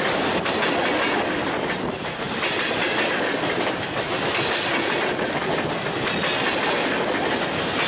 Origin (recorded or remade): recorded